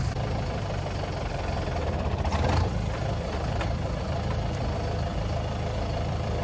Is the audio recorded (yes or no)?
yes